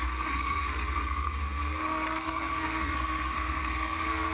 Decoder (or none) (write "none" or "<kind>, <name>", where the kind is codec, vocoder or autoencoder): codec, SNAC